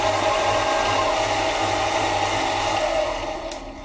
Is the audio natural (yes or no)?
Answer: yes